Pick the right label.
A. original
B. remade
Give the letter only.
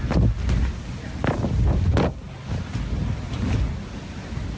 A